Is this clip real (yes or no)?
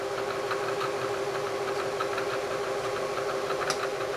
yes